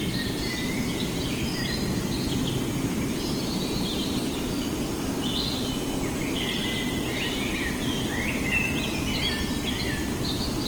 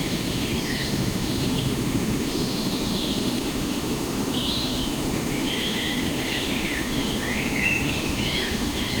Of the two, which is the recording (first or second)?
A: first